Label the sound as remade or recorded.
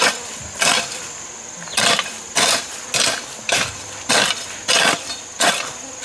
remade